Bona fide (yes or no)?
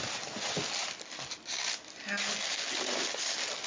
yes